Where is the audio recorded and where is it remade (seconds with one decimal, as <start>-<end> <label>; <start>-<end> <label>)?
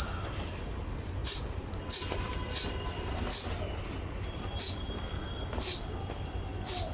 0.0-6.9 recorded